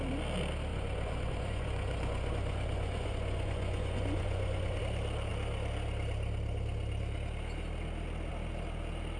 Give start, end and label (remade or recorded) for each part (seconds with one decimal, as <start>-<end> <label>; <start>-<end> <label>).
0.0-0.7 recorded; 0.7-4.8 remade; 4.8-9.2 recorded